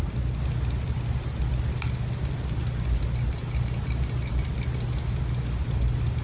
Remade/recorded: recorded